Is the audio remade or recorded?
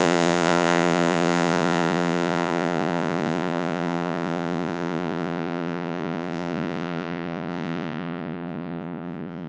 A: remade